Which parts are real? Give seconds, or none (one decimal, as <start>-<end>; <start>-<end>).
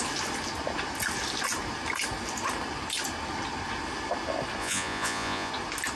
0.0-4.6; 5.5-6.0